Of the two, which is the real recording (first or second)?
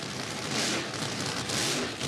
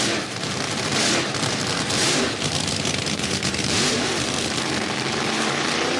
first